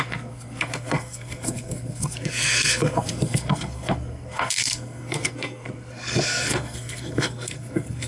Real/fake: fake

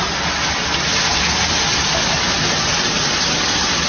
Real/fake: real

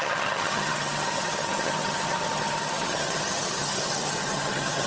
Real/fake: fake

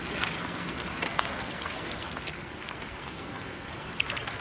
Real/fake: fake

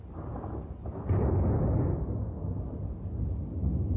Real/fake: real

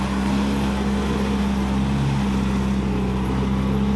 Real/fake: real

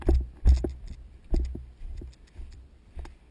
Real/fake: real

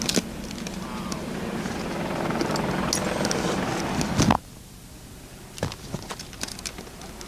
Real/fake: real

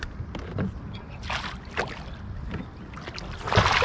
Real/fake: real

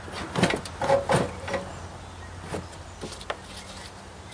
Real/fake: real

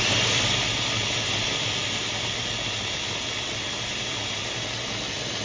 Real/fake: real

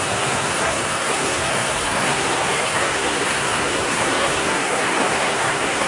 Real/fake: fake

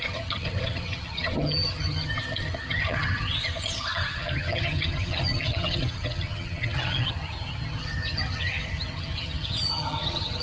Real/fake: fake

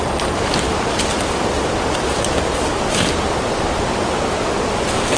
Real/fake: real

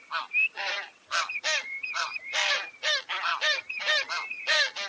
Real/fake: fake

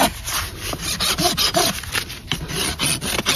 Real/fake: real